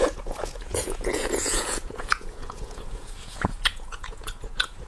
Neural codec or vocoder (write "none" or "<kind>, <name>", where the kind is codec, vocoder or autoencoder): vocoder, Vocos